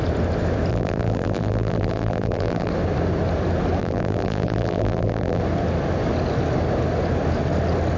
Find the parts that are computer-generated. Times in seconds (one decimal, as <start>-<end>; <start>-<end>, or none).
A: 0.7-2.7; 3.8-5.4

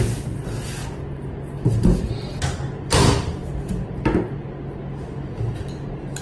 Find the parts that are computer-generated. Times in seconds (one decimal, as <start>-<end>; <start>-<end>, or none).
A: none

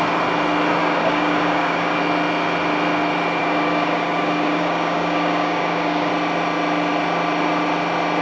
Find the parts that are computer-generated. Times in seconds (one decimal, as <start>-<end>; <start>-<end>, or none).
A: 0.8-2.0; 3.4-6.1